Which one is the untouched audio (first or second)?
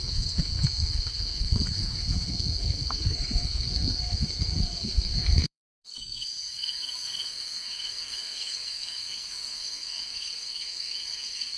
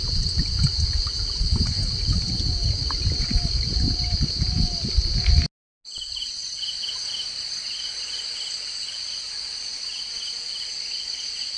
second